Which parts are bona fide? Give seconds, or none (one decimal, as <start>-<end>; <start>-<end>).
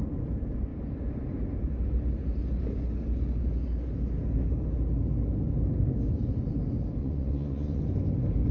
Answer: 0.0-7.0; 7.8-8.5